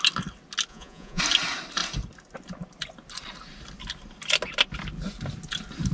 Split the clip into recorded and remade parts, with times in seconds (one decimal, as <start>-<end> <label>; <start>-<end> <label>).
0.0-0.7 recorded; 0.7-1.2 remade; 1.2-5.9 recorded